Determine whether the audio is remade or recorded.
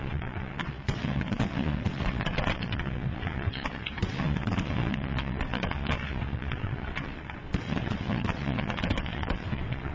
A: remade